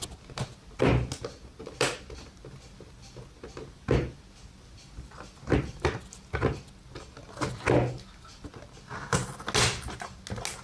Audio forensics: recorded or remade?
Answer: recorded